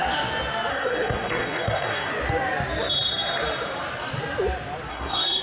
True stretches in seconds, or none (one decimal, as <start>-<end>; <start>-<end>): 0.0-0.7; 2.1-4.9